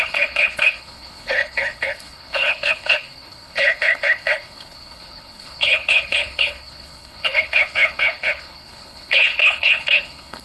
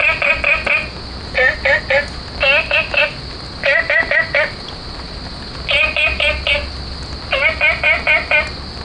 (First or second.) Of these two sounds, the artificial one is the first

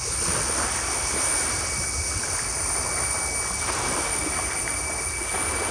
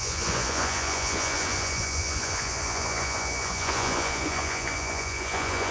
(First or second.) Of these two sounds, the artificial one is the second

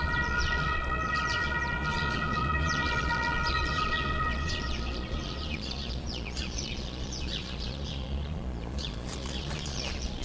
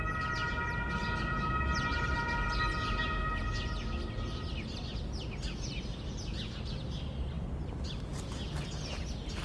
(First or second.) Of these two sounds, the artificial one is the first